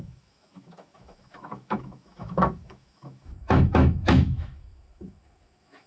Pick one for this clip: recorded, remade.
remade